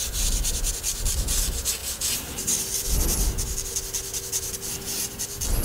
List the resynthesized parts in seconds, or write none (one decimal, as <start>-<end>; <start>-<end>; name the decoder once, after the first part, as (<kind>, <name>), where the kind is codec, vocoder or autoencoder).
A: 1.8-2.9 (vocoder, BigVGAN v2)